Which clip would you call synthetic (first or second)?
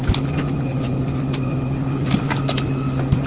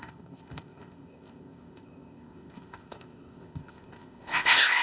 second